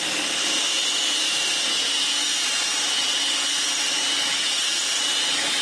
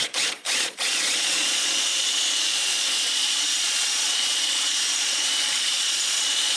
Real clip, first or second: first